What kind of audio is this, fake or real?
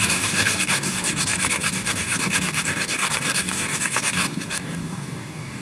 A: fake